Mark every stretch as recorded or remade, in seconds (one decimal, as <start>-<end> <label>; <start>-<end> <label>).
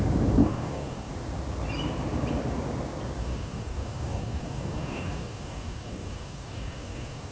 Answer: 0.0-0.4 recorded; 0.4-1.1 remade; 1.1-3.2 recorded; 3.2-7.3 remade